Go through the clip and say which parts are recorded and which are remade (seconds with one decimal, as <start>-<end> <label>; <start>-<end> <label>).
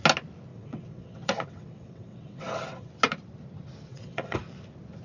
0.0-0.5 recorded; 0.5-2.9 remade; 2.9-3.9 recorded; 3.9-4.4 remade; 4.4-5.0 recorded